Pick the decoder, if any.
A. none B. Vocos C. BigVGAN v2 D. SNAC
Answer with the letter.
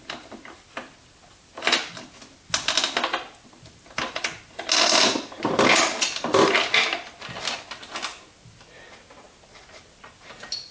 A